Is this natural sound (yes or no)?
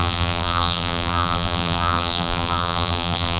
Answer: no